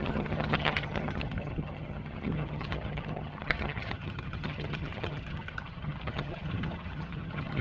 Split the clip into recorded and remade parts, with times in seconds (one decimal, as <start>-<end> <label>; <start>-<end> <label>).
0.0-7.6 remade